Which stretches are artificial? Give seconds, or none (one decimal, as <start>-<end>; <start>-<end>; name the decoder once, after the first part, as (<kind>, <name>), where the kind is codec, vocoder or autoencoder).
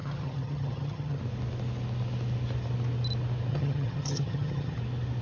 0.0-1.2 (vocoder, HiFi-GAN); 3.5-4.8